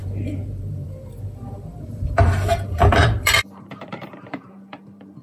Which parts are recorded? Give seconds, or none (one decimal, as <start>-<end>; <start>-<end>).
none